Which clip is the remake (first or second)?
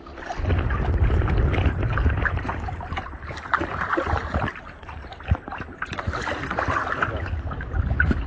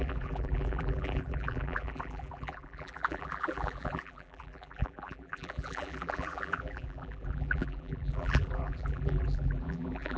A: second